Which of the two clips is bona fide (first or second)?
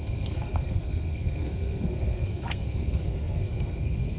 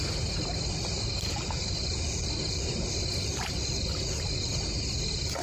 second